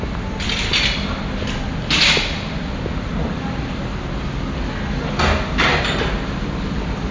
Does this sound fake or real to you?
real